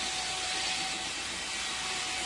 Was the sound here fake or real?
real